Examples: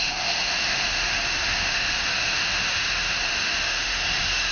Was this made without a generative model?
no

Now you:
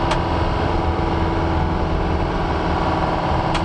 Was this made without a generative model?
yes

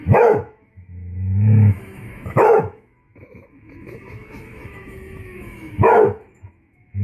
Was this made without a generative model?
no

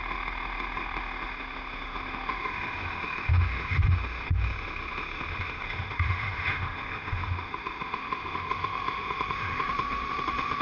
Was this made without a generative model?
no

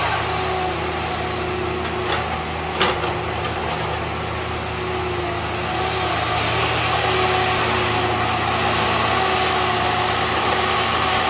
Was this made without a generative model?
yes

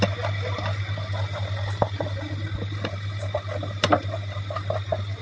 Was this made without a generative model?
yes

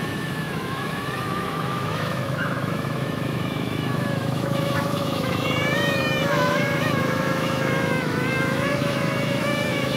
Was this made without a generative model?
no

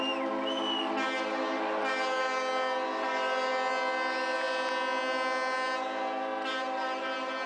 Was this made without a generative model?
yes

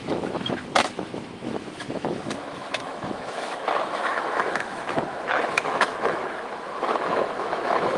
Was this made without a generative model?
no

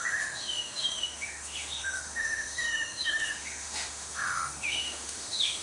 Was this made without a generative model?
no